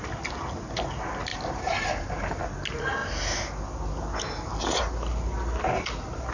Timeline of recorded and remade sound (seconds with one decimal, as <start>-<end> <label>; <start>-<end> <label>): 0.0-1.3 recorded; 1.3-2.4 remade; 2.4-6.3 recorded